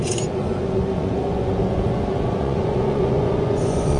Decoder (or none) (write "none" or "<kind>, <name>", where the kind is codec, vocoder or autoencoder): vocoder, Vocos